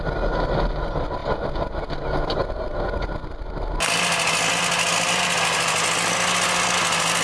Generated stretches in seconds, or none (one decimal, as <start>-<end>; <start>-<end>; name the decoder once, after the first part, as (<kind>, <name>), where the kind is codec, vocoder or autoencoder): none